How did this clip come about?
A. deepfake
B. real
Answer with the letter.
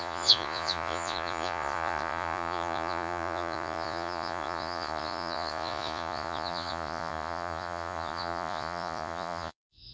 A